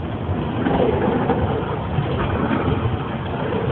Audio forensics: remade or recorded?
recorded